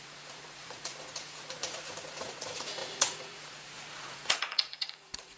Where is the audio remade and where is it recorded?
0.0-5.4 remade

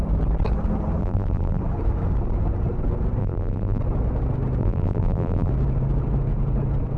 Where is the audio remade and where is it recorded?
0.0-1.0 recorded; 1.0-1.6 remade; 1.6-3.2 recorded; 3.2-3.8 remade; 3.8-4.6 recorded; 4.6-5.5 remade; 5.5-7.0 recorded

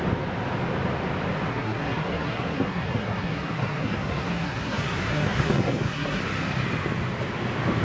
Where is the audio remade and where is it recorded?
0.0-1.5 recorded; 1.5-6.2 remade; 6.2-7.8 recorded

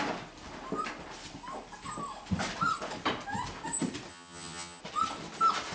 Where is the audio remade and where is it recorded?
0.0-4.1 recorded; 4.1-4.8 remade; 4.8-5.7 recorded

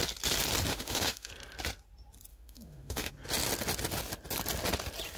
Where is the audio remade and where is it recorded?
0.0-0.7 recorded; 0.7-1.3 remade; 1.3-2.3 recorded; 2.3-3.1 remade; 3.1-5.2 recorded

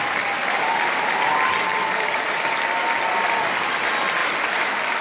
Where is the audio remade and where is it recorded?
0.0-1.7 recorded; 1.7-3.4 remade; 3.4-4.2 recorded; 4.2-5.0 remade